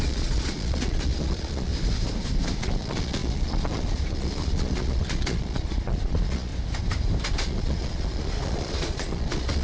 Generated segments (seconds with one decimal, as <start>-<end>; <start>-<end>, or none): 0.0-1.7; 2.6-6.5; 7.3-9.6